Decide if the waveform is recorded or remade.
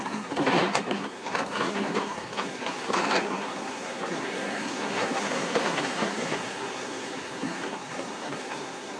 remade